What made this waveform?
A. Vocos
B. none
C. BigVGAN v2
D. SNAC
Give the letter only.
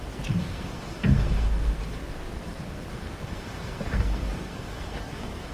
D